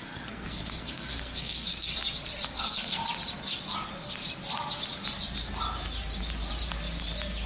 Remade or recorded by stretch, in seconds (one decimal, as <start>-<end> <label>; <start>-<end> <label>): 0.0-1.9 remade; 1.9-2.6 recorded; 2.6-3.0 remade; 3.0-7.5 recorded